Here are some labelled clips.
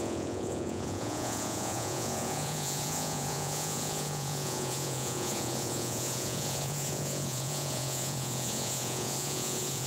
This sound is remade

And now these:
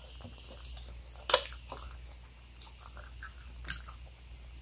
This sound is recorded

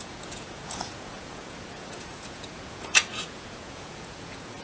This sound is remade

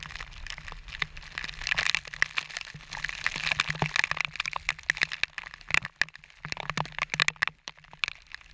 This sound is recorded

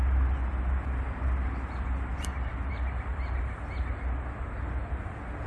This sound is recorded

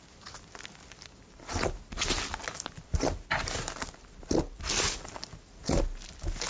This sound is recorded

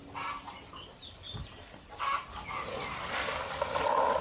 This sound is recorded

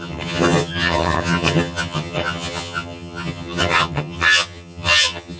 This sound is remade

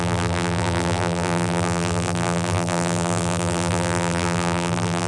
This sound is remade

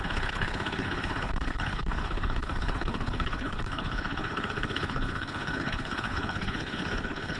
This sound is remade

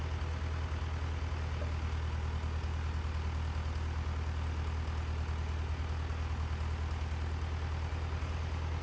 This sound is recorded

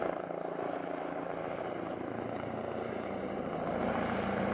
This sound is remade